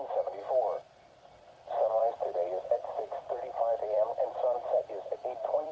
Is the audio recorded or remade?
remade